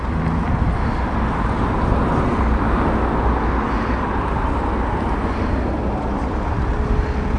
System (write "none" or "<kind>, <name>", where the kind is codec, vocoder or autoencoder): none